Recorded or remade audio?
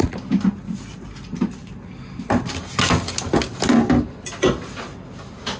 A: recorded